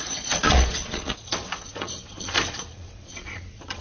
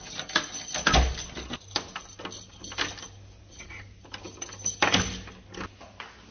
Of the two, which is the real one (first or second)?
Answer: second